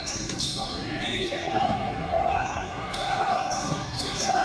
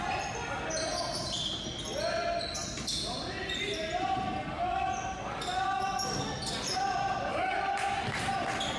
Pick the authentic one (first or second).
second